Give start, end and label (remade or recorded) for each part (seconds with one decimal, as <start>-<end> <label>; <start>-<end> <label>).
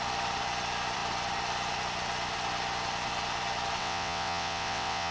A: 0.0-3.8 recorded; 3.8-5.1 remade